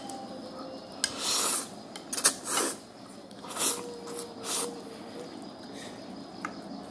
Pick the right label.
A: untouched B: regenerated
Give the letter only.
A